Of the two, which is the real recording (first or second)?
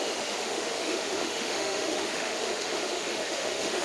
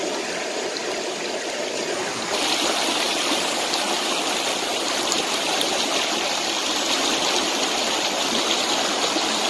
second